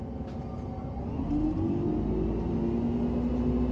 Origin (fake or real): real